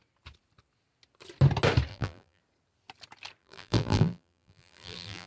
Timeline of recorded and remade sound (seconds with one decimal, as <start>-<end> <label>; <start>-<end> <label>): 0.0-1.9 recorded; 1.9-2.4 remade; 2.4-3.4 recorded; 3.4-5.3 remade